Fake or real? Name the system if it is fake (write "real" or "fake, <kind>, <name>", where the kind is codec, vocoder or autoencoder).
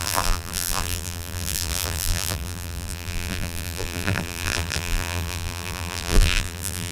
fake, vocoder, BigVGAN v2